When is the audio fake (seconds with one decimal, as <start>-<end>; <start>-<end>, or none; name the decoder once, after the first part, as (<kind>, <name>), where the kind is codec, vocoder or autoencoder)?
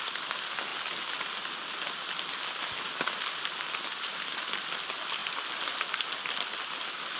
none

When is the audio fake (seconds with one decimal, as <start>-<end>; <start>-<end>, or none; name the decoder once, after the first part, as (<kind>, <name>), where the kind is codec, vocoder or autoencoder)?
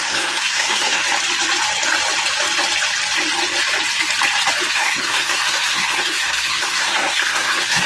0.0-1.0 (codec, SNAC); 4.7-7.9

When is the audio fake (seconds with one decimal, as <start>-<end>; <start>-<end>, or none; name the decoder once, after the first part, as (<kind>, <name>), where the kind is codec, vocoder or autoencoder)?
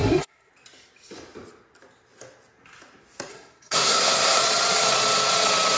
0.0-0.5 (codec, SNAC); 3.3-4.4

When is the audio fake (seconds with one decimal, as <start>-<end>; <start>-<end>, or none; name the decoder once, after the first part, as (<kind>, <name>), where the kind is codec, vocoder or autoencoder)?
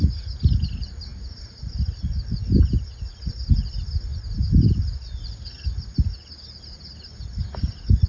none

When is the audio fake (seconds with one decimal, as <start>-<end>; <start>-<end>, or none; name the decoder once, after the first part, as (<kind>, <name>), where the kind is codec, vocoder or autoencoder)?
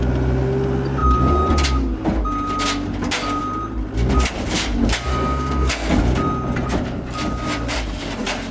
5.1-5.9 (codec, SNAC)